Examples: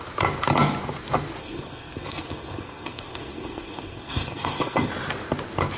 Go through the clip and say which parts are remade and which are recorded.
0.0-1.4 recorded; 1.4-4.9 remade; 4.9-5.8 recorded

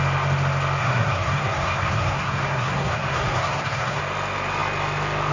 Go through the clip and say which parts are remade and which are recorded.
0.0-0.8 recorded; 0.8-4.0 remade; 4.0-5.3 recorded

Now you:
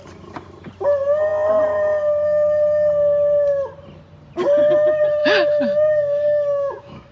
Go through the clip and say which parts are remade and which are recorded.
0.0-5.2 recorded; 5.2-7.1 remade

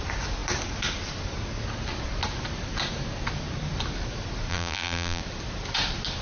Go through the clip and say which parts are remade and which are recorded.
0.0-4.5 recorded; 4.5-5.2 remade; 5.2-6.2 recorded

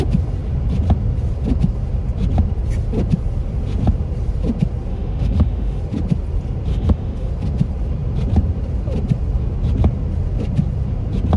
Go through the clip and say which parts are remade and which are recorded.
0.0-4.9 recorded; 4.9-5.8 remade; 5.8-6.7 recorded; 6.7-7.3 remade; 7.3-11.4 recorded

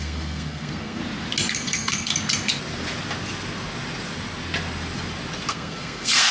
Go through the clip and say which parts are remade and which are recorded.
0.0-1.0 remade; 1.0-1.5 recorded; 1.5-2.1 remade; 2.1-5.5 recorded; 5.5-6.3 remade